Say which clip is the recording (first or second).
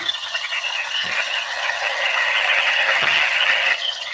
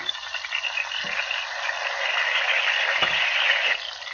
second